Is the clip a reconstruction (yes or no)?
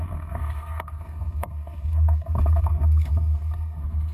yes